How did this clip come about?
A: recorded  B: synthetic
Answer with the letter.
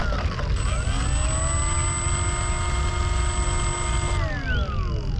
A